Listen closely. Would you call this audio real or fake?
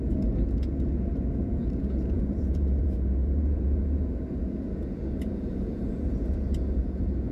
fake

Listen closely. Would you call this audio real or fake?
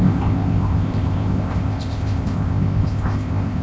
fake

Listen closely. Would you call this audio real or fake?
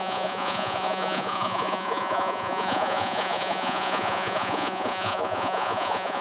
fake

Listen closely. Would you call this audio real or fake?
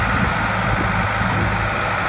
real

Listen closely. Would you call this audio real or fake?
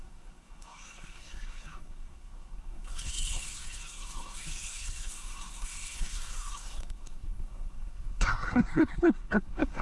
fake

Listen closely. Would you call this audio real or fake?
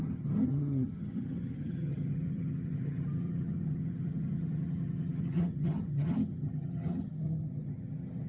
fake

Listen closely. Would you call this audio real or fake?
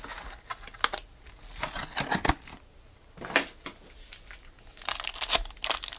real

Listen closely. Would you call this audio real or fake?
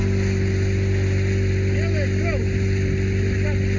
real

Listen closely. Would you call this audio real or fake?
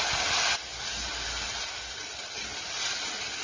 real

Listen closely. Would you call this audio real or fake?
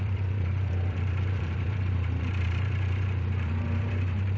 fake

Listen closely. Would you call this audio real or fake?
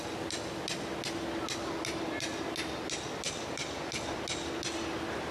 real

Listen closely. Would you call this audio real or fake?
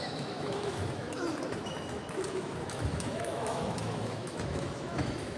fake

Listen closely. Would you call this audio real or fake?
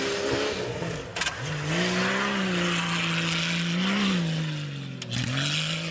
real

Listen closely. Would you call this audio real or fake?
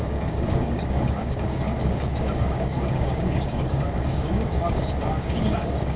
fake